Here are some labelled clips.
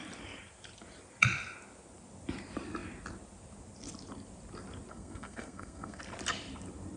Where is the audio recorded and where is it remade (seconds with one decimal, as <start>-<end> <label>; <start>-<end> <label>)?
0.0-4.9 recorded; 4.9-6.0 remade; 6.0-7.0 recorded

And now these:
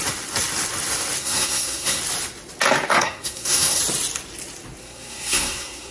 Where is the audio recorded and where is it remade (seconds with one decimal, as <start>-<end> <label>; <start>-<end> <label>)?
0.0-1.2 recorded; 1.2-2.0 remade; 2.0-2.9 recorded; 2.9-3.8 remade; 3.8-4.8 recorded; 4.8-5.9 remade

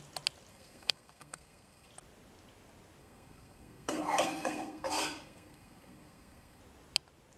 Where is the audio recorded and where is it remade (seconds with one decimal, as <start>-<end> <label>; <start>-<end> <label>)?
0.0-0.5 recorded; 0.5-1.9 remade; 1.9-3.0 recorded; 3.0-6.6 remade; 6.6-7.4 recorded